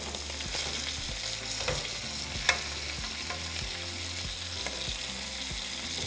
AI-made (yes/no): no